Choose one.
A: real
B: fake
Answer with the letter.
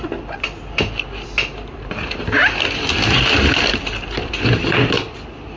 A